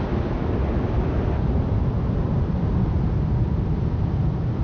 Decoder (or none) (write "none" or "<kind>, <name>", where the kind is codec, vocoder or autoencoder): none